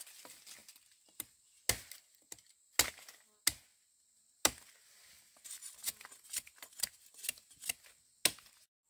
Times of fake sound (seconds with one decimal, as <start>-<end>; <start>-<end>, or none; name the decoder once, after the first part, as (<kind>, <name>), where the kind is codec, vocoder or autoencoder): none